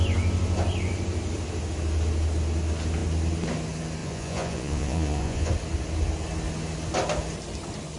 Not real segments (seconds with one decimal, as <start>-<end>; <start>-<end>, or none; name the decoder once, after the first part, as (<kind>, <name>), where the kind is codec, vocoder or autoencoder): 4.0-5.5 (vocoder, Vocos)